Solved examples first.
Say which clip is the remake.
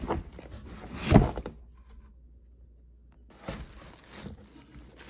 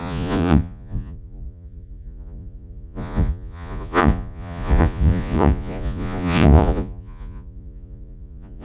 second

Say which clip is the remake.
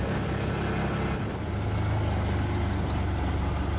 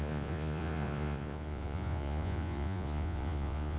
second